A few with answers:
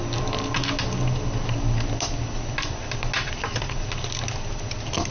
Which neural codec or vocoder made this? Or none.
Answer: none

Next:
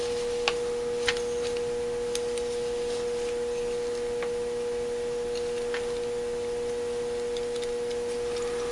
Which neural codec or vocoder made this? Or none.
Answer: none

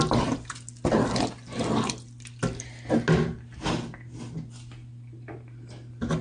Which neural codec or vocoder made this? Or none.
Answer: none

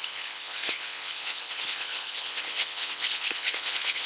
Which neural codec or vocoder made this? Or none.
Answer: codec, HILCodec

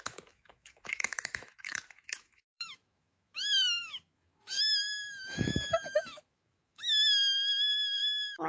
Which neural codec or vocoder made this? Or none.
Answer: autoencoder, DAC-VAE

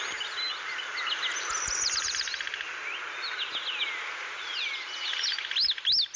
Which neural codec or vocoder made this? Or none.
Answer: none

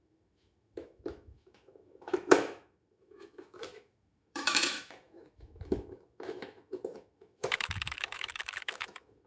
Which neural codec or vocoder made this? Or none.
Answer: autoencoder, DAC-VAE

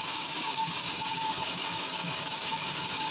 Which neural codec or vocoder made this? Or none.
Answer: codec, DAC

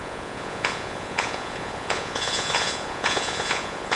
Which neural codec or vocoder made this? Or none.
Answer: vocoder, Vocos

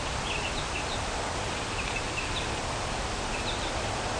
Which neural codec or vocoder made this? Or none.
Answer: none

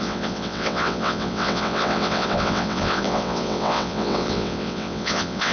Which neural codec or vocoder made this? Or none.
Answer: vocoder, WaveNeXt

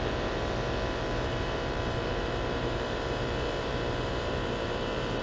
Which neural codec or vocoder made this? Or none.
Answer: vocoder, BigVGAN v2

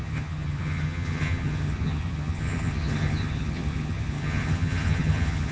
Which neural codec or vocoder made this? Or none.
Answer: vocoder, HiFi-GAN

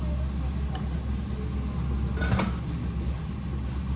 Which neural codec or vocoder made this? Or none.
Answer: none